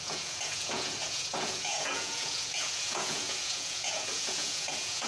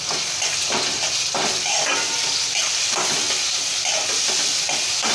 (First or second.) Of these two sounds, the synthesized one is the first